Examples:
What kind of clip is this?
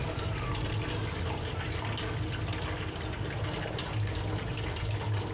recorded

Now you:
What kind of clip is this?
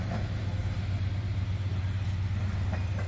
recorded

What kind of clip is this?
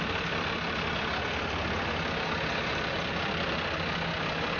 recorded